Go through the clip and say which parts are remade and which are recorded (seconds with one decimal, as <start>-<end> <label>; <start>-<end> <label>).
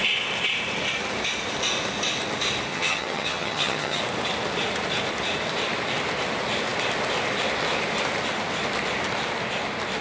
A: 0.0-2.7 recorded; 2.7-4.0 remade; 4.0-10.0 recorded